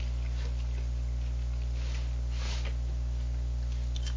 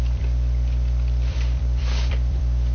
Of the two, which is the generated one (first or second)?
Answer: second